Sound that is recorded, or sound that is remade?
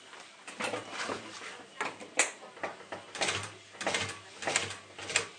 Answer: recorded